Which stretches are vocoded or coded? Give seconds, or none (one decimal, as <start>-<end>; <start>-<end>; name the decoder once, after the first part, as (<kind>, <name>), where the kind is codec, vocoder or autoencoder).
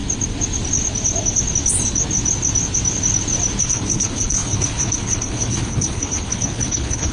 3.6-7.1 (codec, HILCodec)